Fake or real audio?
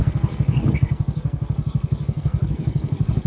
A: fake